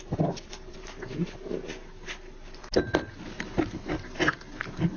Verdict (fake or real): real